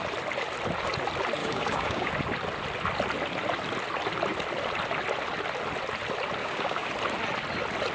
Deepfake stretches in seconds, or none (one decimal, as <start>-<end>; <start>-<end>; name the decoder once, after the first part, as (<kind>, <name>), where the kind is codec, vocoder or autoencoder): 1.4-2.1 (codec, DAC); 6.4-6.9